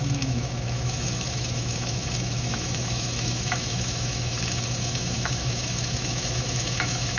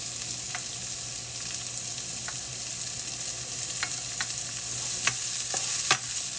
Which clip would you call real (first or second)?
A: second